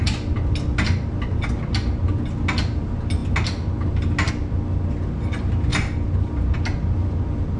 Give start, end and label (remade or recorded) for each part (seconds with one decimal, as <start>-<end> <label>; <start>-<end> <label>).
0.0-7.6 recorded